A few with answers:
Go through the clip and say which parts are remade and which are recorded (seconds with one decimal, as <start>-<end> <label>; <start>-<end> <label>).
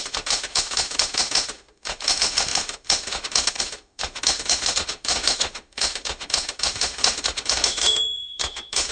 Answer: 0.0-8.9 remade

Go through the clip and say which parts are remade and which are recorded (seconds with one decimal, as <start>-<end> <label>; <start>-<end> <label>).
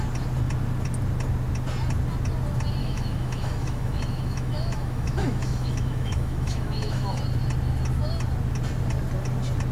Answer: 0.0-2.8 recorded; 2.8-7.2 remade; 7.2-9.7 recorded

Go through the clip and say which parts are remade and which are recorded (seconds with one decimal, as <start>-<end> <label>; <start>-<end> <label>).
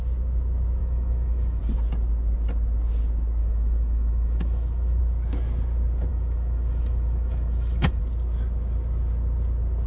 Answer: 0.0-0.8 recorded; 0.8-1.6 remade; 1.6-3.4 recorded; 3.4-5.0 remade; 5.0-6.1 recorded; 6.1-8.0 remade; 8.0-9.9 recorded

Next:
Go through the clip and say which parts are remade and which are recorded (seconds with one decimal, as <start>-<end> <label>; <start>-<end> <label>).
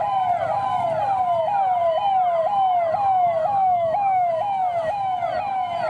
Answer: 0.0-3.4 recorded; 3.4-4.3 remade; 4.3-5.9 recorded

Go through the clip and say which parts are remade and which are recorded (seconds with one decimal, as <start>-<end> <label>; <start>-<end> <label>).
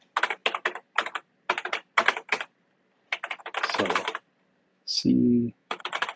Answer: 0.0-4.7 recorded; 4.7-5.8 remade; 5.8-6.2 recorded